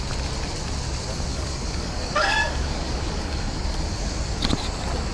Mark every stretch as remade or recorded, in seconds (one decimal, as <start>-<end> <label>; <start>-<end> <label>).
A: 0.0-1.3 recorded; 1.3-3.6 remade; 3.6-5.1 recorded